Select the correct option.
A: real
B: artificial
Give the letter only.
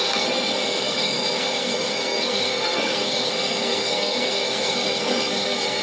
B